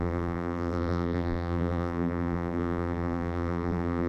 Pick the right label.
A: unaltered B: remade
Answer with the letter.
B